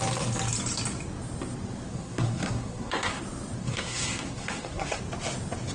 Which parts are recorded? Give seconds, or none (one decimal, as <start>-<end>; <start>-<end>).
0.0-1.9; 3.2-3.6; 5.0-5.7

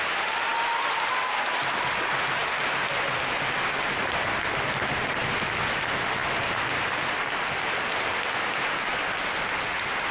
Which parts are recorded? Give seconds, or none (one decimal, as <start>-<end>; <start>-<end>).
0.0-10.1

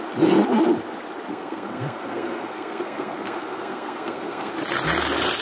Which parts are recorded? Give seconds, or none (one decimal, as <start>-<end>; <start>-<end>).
0.0-1.3; 4.5-5.4

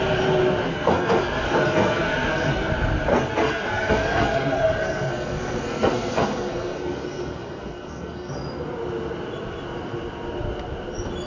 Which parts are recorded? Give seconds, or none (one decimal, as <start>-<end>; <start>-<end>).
0.0-0.7; 2.7-3.1; 8.3-11.3

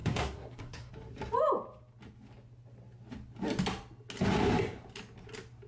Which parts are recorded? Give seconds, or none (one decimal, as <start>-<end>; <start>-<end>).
0.9-5.7

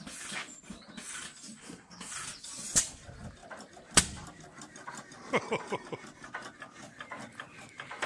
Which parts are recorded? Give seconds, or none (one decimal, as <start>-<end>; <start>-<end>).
0.0-1.6; 2.1-8.1